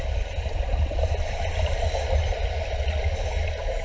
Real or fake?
real